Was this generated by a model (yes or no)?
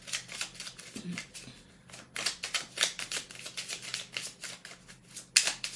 no